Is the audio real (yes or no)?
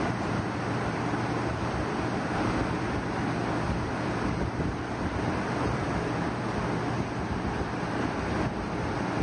yes